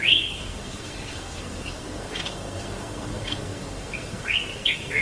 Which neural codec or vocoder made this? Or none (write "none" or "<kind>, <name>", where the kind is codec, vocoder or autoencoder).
codec, SNAC